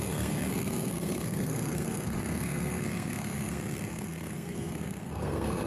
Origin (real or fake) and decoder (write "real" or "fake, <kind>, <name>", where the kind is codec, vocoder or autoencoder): fake, codec, SNAC